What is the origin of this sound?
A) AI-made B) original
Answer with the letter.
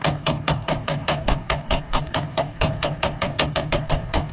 A